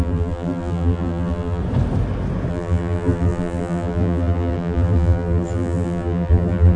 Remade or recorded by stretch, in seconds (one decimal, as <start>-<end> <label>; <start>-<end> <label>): 0.0-1.6 remade; 1.6-2.5 recorded; 2.5-6.8 remade